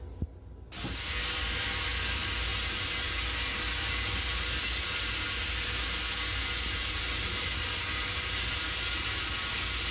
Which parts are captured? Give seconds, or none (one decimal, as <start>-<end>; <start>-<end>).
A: 0.0-9.9